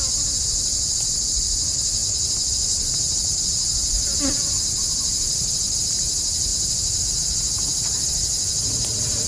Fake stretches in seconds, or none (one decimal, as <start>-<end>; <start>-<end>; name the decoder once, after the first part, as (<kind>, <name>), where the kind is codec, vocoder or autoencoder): 6.5-7.0 (vocoder, BigVGAN v2)